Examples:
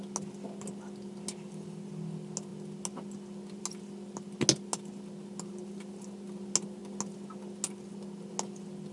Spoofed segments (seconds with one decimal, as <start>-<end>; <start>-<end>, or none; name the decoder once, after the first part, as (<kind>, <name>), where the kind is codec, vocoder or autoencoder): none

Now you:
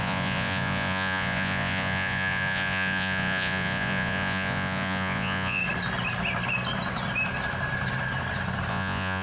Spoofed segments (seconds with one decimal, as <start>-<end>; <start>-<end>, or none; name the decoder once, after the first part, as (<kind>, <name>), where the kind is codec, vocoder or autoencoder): 0.0-5.6 (vocoder, Vocos); 8.7-9.2

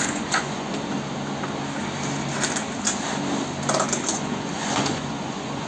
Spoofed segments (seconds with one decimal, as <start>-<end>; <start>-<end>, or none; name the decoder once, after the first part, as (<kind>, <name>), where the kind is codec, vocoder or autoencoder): 0.0-0.7 (vocoder, Vocos); 4.1-5.7

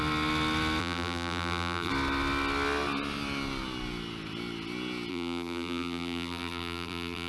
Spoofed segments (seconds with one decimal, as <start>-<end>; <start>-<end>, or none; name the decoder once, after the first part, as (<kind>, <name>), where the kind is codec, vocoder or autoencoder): 0.8-1.9 (vocoder, BigVGAN v2); 5.1-7.3

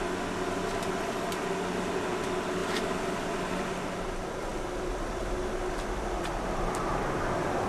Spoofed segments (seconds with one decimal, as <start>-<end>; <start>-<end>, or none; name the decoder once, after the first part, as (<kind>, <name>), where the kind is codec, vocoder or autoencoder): none

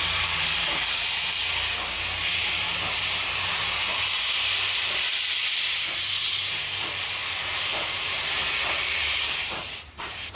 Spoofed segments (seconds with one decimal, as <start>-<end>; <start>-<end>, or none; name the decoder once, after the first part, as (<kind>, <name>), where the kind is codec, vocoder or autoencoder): 0.0-1.4 (vocoder, BigVGAN v2); 2.4-3.6; 5.3-10.4